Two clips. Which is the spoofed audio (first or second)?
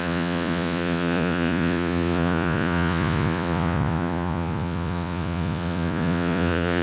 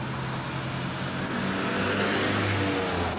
first